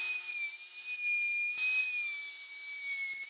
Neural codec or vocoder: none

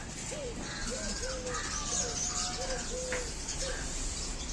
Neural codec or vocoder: none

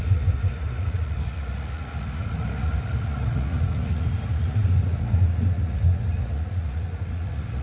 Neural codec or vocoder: vocoder, Vocos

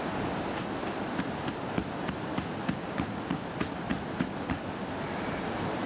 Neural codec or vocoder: none